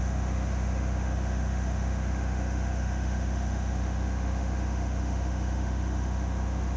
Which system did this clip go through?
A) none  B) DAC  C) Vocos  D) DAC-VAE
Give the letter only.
D